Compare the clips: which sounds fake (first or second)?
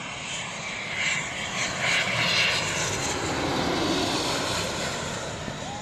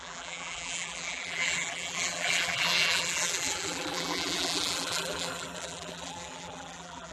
second